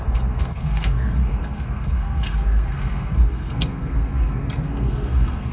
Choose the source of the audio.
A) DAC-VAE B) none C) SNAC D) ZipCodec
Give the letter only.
C